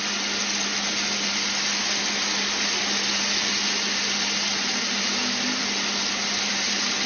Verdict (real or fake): real